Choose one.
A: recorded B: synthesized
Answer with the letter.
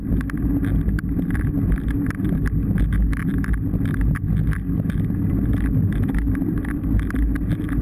A